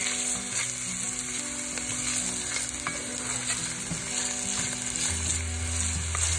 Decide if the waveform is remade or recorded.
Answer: recorded